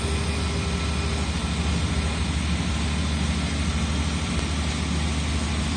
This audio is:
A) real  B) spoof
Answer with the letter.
A